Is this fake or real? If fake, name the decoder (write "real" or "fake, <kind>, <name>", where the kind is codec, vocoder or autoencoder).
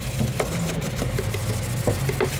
real